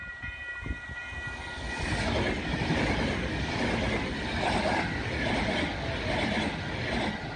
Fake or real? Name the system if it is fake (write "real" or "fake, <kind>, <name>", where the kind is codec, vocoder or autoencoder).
real